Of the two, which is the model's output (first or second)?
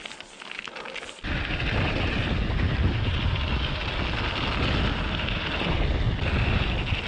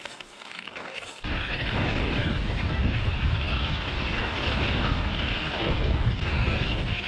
second